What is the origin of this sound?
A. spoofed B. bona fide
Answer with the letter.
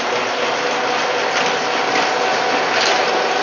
B